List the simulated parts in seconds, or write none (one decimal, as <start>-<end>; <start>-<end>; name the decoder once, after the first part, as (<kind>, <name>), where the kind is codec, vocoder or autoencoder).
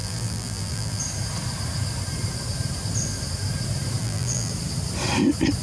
0.0-1.0 (vocoder, BigVGAN v2); 4.0-4.5